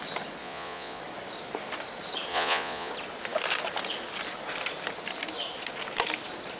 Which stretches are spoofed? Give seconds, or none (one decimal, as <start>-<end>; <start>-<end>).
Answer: 0.4-1.0; 2.3-2.9